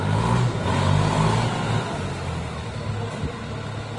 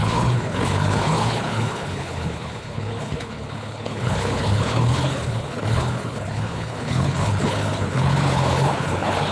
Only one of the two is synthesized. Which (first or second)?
second